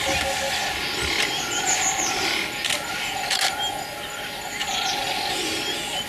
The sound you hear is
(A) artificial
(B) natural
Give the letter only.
B